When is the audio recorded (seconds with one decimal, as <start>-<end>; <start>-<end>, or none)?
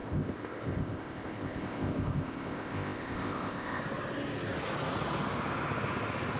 3.8-6.4